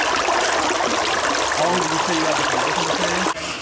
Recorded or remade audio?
recorded